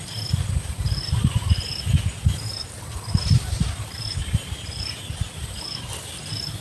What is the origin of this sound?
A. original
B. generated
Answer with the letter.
A